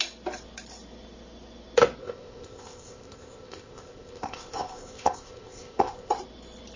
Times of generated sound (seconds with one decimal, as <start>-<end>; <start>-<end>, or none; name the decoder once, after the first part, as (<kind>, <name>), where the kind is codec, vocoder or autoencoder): 2.0-6.1 (codec, ZipCodec)